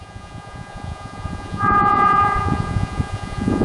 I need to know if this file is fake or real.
fake